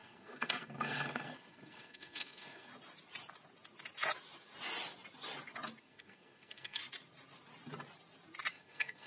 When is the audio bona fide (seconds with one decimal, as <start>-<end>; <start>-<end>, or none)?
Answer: 2.7-5.8; 6.8-8.5